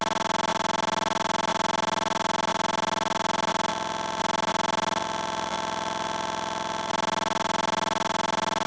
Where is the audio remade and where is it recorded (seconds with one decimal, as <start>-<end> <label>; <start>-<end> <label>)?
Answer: 0.0-3.7 recorded; 3.7-4.2 remade; 4.2-5.0 recorded; 5.0-6.9 remade; 6.9-8.7 recorded